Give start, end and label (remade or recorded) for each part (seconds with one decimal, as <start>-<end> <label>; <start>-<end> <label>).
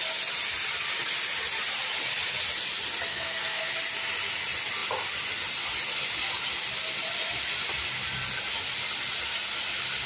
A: 0.0-3.1 recorded; 3.1-3.7 remade; 3.7-10.1 recorded